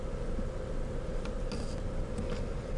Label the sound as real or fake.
real